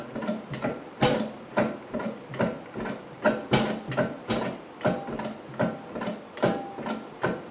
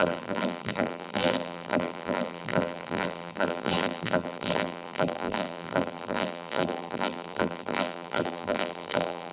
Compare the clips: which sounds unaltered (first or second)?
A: first